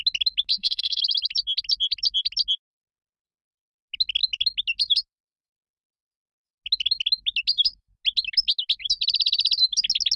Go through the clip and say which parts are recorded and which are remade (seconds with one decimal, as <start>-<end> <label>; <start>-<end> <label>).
0.0-0.5 recorded; 0.5-1.0 remade; 1.0-10.2 recorded